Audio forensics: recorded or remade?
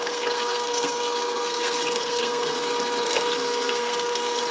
remade